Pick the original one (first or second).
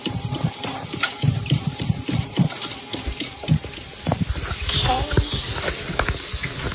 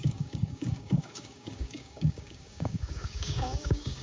first